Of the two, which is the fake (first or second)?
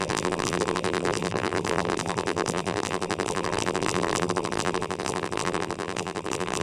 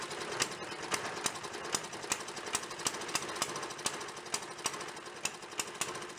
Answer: first